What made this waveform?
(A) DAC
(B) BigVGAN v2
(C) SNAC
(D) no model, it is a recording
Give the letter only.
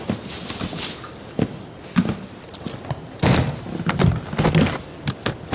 D